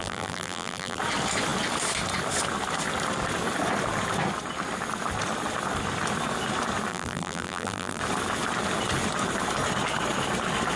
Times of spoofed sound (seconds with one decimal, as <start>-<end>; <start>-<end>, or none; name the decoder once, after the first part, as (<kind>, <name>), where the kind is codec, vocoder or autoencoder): 0.0-1.0 (vocoder, BigVGAN v2); 6.9-8.0

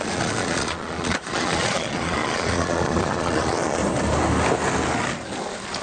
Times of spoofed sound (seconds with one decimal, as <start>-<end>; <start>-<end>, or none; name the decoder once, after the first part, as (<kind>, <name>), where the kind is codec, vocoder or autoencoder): 0.0-3.8 (vocoder, Vocos)

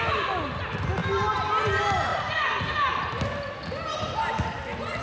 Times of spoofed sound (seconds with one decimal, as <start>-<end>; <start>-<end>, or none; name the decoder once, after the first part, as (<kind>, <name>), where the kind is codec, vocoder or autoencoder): none

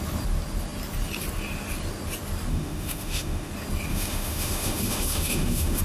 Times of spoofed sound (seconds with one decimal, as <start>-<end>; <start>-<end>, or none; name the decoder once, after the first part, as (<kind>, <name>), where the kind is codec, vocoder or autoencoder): 2.5-3.5 (autoencoder, DAC-VAE); 3.9-5.8